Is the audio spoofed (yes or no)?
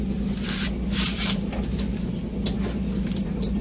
no